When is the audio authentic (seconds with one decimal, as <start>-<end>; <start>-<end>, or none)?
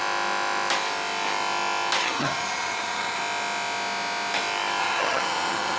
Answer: 0.0-2.0; 3.2-4.8